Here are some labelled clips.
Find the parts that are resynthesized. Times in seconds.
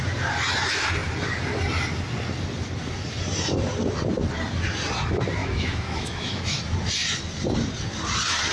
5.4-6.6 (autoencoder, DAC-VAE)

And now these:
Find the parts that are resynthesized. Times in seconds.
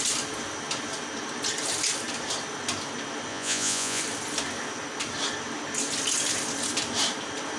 3.3-4.0 (vocoder, Vocos)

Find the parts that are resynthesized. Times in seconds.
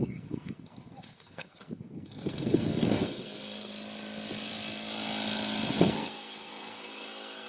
0.0-3.7 (codec, SNAC); 5.7-7.5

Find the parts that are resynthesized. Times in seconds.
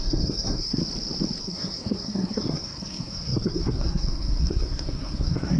0.0-0.8 (codec, SNAC); 1.4-5.6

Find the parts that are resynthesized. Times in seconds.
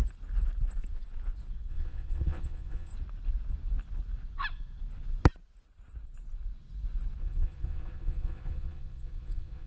1.7-2.9 (vocoder, Vocos); 7.2-9.7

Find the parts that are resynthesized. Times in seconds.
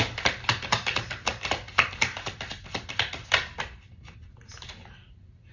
none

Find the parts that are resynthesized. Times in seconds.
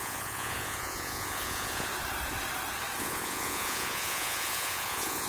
0.0-1.9 (vocoder, Vocos); 3.0-5.3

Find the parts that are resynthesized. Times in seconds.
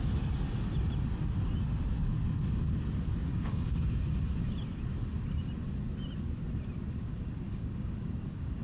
3.2-3.8 (codec, DAC); 7.1-8.6